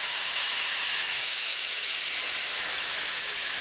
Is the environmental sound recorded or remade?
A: remade